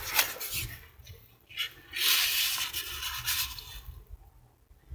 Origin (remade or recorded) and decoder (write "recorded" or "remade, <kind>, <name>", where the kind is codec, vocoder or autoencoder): recorded